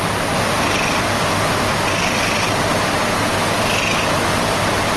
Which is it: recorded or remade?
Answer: recorded